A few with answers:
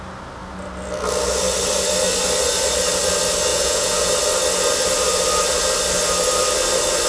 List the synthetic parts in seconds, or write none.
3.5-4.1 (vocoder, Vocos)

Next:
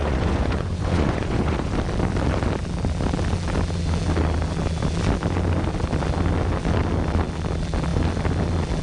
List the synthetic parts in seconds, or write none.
0.0-1.7 (vocoder, Vocos)

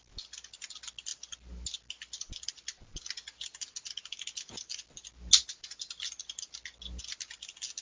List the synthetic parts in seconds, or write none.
none

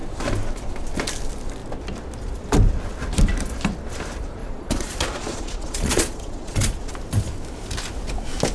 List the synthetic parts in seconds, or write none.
4.4-6.9 (vocoder, Vocos)

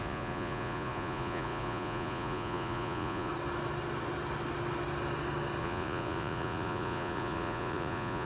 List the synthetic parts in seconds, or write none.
0.0-3.3 (vocoder, Vocos); 5.6-8.2

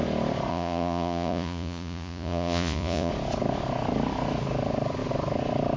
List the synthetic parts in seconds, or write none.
0.5-3.1 (vocoder, Vocos)

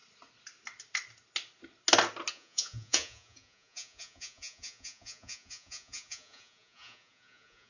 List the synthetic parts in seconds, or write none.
2.3-7.7 (vocoder, Vocos)